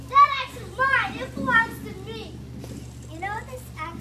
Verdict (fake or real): real